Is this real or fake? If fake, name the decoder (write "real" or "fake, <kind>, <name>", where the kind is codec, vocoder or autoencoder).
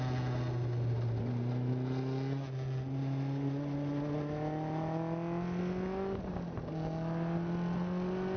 real